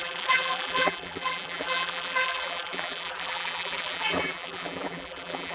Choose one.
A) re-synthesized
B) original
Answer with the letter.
A